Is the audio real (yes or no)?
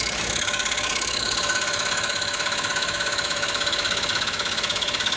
no